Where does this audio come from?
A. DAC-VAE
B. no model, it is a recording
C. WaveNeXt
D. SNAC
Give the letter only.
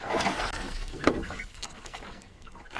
D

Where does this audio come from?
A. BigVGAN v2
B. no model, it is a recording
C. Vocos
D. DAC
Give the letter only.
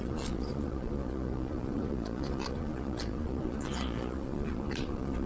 C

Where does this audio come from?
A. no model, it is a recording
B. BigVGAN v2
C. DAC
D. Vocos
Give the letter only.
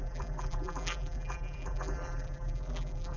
B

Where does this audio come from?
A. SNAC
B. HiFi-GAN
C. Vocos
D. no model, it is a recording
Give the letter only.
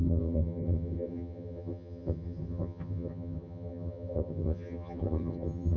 B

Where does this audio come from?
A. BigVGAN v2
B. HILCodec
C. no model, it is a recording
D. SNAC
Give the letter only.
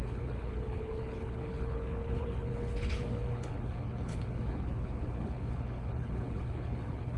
B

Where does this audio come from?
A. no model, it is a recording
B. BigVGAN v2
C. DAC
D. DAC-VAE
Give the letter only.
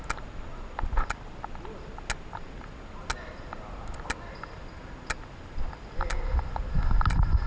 A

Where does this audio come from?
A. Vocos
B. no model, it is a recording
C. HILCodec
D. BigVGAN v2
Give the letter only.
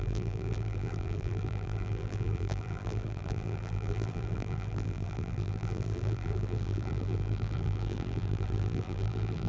D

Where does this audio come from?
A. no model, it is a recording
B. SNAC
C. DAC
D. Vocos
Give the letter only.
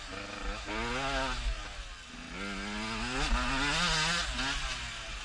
A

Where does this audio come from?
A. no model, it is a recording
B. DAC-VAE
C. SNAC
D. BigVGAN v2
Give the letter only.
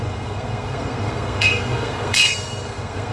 C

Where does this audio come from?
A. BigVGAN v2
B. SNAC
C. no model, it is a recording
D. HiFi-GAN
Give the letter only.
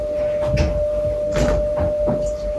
C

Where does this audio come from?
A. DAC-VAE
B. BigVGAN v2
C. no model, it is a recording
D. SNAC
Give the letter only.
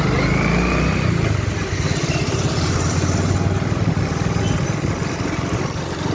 C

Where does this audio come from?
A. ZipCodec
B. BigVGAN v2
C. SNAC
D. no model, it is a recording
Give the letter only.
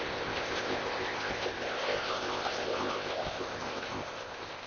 A